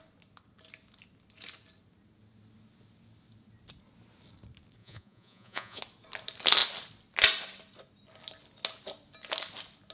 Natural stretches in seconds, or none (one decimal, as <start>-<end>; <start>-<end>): 0.0-4.8; 5.8-9.9